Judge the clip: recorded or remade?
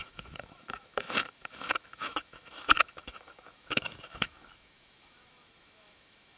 remade